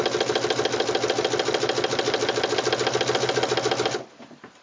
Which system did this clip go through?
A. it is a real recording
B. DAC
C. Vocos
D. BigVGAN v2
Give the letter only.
A